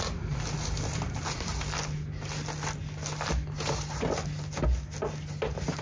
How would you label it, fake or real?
real